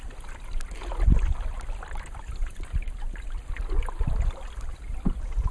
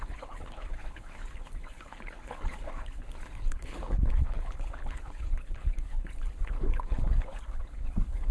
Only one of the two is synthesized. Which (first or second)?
second